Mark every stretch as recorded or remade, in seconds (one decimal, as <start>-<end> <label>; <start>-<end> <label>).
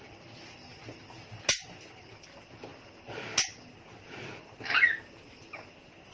0.0-6.1 recorded